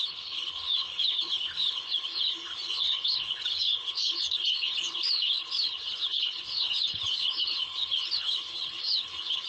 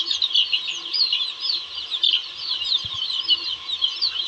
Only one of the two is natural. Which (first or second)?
second